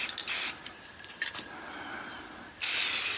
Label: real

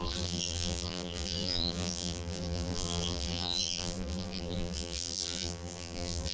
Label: fake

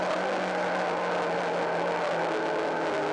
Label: real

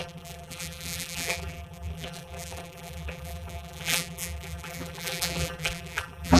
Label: fake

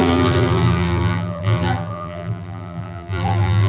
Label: fake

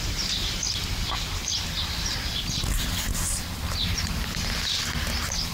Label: real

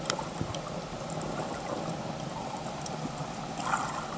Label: fake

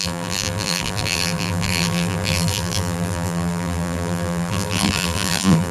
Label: fake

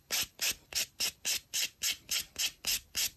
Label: real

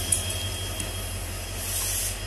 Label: real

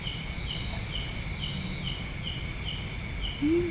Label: real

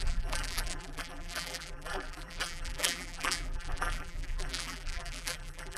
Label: fake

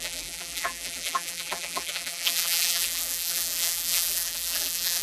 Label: fake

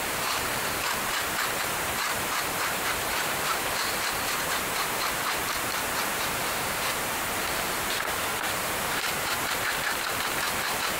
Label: fake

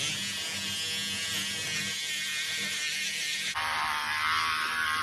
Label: real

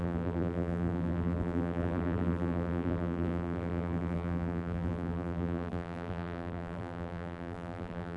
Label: fake